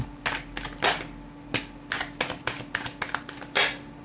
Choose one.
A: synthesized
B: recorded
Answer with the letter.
B